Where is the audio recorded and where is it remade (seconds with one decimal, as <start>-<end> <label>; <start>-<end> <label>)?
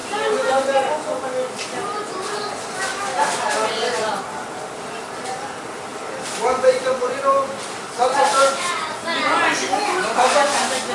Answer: 0.0-5.9 recorded; 5.9-8.4 remade; 8.4-10.9 recorded